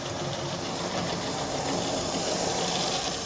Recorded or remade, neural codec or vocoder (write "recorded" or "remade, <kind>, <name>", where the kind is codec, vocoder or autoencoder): remade, vocoder, BigVGAN v2